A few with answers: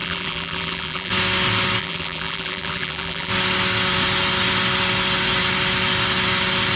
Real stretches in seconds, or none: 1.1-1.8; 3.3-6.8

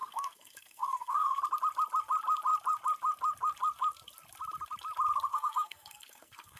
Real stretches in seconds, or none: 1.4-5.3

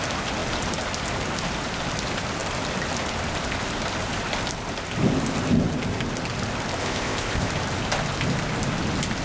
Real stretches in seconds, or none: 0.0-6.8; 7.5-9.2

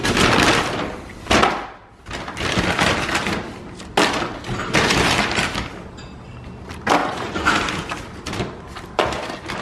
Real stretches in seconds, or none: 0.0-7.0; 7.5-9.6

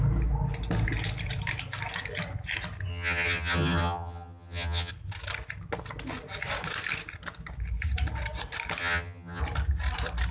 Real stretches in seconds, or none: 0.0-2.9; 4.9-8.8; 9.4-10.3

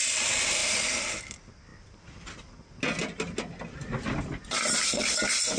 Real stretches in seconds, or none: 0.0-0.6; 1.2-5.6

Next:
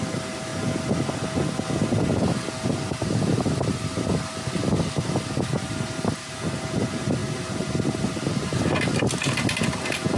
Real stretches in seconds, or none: 0.0-10.2

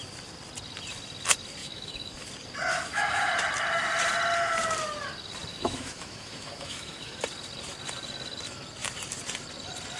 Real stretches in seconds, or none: 0.0-1.6; 2.3-2.7; 3.3-5.5; 7.2-10.0